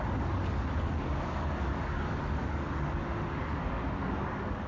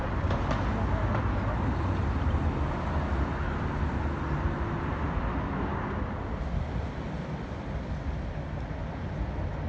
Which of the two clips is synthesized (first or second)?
first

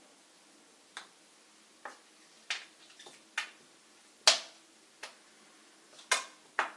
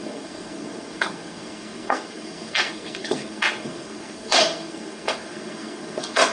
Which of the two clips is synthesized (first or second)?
second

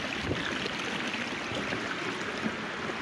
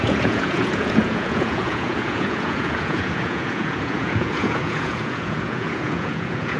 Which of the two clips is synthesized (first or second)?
second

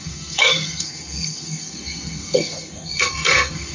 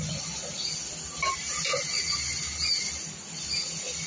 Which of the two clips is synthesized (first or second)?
first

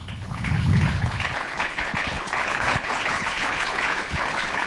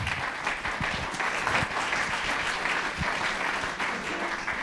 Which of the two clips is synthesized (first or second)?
first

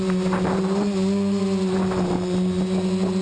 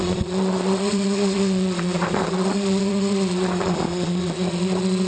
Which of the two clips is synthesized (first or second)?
second